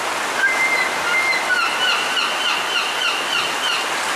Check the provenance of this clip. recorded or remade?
recorded